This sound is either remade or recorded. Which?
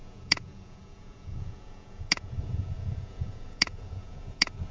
remade